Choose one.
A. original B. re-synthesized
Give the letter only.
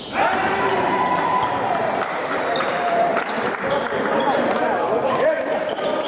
B